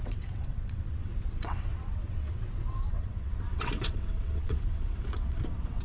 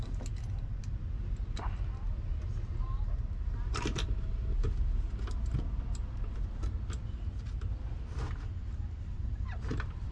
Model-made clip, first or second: first